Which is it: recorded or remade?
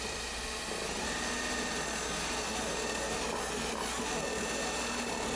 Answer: recorded